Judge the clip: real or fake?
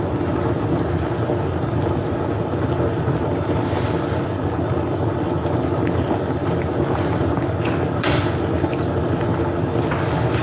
real